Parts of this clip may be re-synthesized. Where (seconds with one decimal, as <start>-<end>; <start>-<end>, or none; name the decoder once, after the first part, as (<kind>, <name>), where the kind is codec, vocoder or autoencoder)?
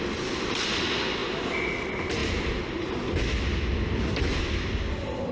none